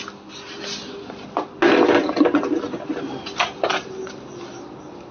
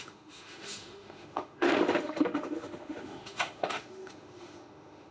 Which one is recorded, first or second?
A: first